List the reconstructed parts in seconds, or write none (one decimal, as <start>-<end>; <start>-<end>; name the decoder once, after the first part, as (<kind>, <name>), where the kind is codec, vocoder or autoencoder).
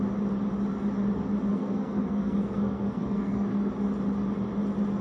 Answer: 1.5-3.7 (codec, SNAC)